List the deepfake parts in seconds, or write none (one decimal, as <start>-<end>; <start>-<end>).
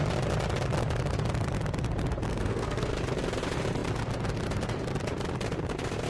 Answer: 2.3-2.9